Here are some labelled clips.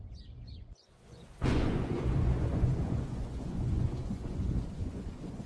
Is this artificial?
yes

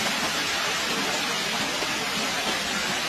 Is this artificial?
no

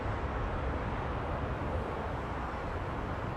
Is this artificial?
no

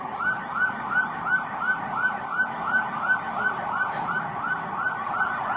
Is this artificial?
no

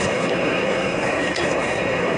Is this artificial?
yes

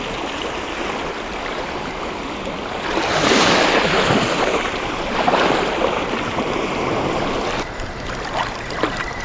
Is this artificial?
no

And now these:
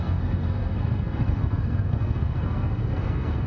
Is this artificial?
yes